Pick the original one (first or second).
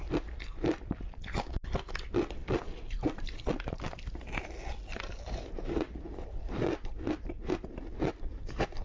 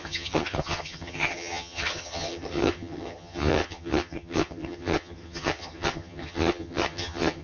first